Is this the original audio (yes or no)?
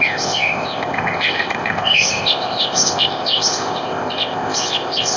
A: no